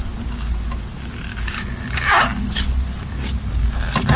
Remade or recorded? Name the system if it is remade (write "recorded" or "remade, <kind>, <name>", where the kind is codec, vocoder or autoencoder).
recorded